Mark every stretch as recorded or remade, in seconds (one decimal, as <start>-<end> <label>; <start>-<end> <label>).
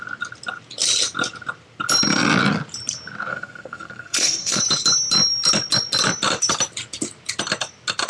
0.0-3.3 recorded; 3.3-4.6 remade; 4.6-8.1 recorded